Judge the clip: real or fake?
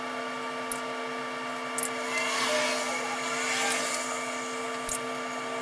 real